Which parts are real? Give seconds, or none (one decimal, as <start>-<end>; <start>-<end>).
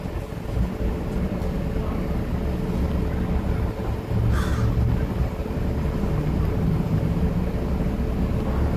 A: 0.0-8.8